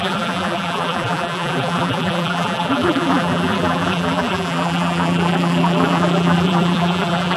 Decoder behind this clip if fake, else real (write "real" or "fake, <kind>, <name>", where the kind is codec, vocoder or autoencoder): fake, vocoder, BigVGAN v2